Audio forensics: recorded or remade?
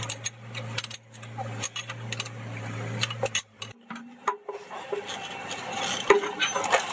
recorded